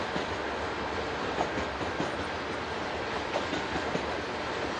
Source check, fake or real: real